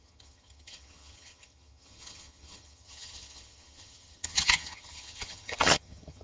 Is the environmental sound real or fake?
fake